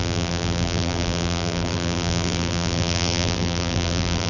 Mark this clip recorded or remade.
remade